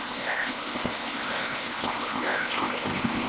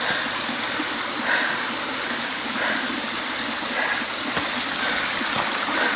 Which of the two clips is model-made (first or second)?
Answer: first